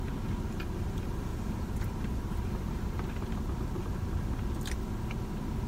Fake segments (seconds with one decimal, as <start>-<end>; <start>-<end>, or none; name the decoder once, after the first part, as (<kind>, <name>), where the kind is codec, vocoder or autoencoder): 1.3-4.2 (vocoder, BigVGAN v2)